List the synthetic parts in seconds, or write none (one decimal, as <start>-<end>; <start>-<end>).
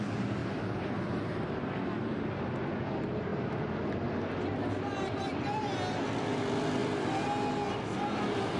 none